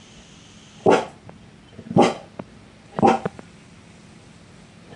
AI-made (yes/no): no